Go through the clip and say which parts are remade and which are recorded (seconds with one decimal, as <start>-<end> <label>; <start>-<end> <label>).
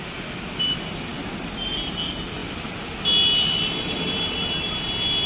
0.0-5.3 recorded